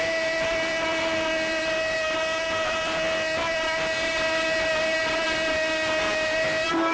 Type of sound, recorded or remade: remade